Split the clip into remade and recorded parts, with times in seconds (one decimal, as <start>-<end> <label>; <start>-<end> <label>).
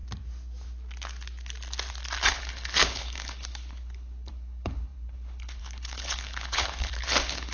0.0-2.3 recorded; 2.3-7.5 remade